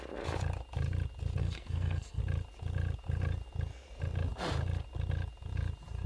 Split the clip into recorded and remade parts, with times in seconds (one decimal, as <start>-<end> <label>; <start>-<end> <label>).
0.0-1.4 recorded; 1.4-2.2 remade; 2.2-6.1 recorded